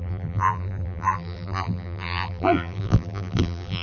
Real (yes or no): no